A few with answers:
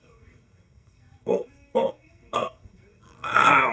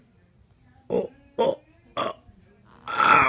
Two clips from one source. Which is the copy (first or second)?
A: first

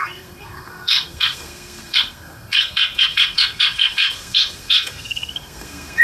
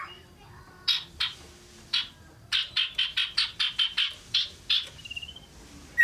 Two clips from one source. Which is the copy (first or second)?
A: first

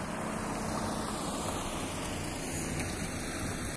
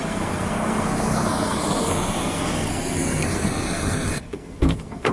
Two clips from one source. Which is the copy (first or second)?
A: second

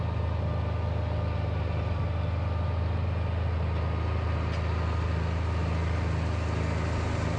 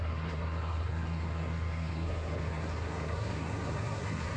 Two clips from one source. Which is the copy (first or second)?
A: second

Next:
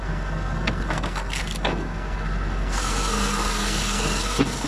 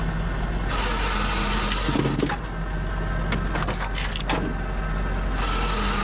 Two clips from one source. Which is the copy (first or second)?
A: first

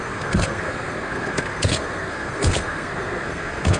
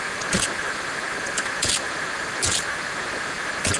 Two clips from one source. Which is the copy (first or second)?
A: first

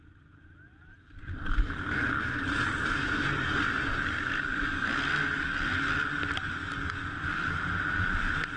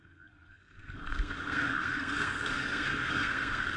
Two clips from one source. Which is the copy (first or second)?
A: second